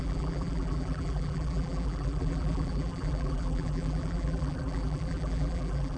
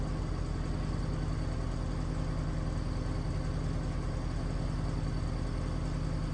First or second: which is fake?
first